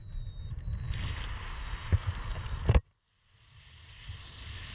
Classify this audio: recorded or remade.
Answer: recorded